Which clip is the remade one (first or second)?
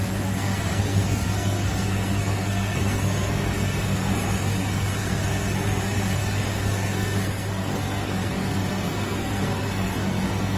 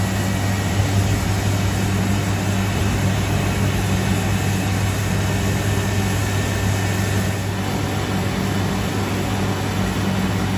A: first